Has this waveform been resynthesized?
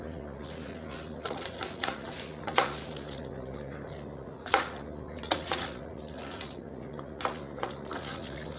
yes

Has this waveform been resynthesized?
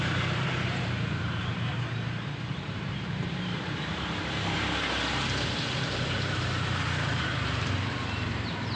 yes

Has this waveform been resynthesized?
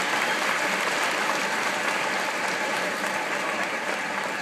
no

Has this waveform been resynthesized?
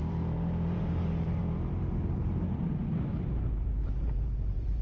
yes